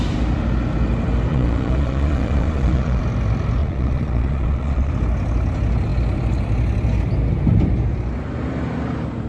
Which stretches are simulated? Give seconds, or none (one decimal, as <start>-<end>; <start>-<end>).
1.3-3.0; 3.6-4.9